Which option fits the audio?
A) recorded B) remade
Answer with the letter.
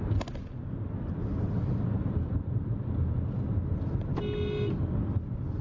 A